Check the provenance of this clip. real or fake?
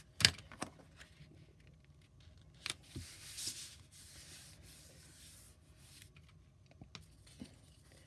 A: real